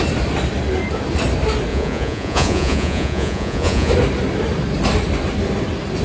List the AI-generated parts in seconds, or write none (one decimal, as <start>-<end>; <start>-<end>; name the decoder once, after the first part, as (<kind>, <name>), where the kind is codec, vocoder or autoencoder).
1.7-3.9 (vocoder, Vocos)